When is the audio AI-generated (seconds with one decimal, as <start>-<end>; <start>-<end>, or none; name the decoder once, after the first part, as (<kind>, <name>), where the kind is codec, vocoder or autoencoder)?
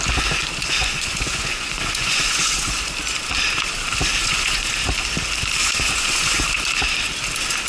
0.6-2.9 (vocoder, Vocos); 4.2-4.7; 5.6-6.4